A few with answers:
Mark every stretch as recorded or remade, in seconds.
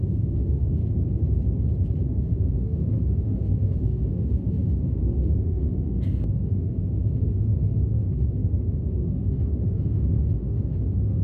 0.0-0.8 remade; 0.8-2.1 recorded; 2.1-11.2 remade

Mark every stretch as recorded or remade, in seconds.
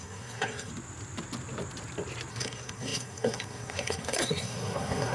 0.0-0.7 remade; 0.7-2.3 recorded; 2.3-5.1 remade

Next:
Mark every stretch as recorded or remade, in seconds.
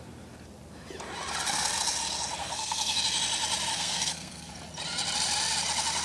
0.0-2.4 recorded; 2.4-3.0 remade; 3.0-3.7 recorded; 3.7-4.5 remade; 4.5-6.0 recorded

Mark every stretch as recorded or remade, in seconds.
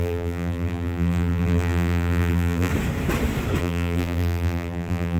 0.0-2.7 remade; 2.7-3.6 recorded; 3.6-5.2 remade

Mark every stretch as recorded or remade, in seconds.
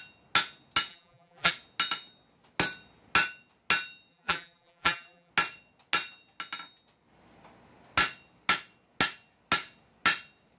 0.0-0.9 recorded; 0.9-1.5 remade; 1.5-4.1 recorded; 4.1-5.3 remade; 5.3-10.6 recorded